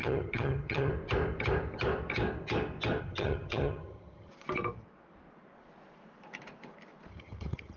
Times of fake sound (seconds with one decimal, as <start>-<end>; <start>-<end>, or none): 0.0-0.9; 3.0-4.3; 7.1-7.8

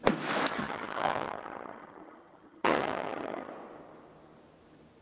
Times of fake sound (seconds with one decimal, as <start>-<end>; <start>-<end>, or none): 0.5-3.5

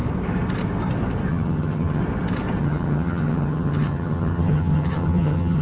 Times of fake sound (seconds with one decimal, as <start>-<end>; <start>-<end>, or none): 1.3-2.0; 2.6-5.6

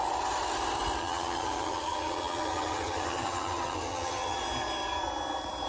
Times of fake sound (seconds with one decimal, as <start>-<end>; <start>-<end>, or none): 1.0-4.4